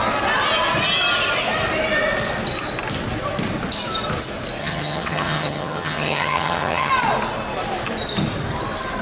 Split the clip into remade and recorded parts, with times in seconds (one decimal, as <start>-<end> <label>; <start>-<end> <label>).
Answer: 0.0-4.6 recorded; 4.6-6.9 remade; 6.9-9.0 recorded